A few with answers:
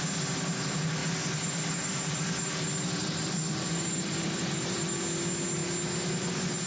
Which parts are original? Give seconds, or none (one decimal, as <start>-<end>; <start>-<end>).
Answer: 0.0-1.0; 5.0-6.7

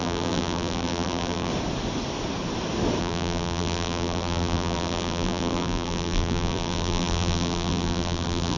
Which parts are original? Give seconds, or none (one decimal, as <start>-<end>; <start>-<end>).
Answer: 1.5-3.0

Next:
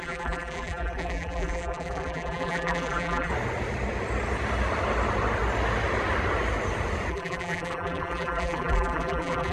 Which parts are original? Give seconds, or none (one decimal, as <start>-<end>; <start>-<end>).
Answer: 3.3-7.1